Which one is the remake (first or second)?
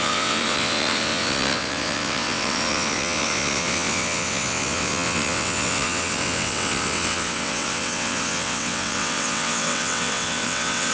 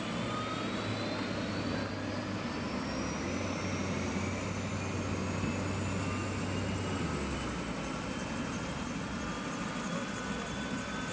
first